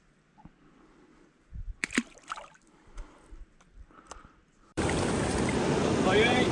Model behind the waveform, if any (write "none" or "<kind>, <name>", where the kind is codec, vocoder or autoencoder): vocoder, BigVGAN v2